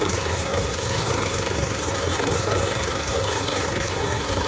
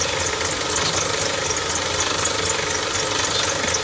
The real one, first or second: second